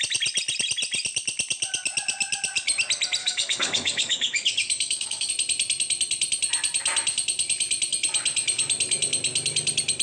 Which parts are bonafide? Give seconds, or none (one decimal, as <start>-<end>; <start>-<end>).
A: 0.0-3.2; 5.3-10.0